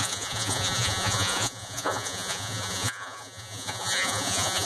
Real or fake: fake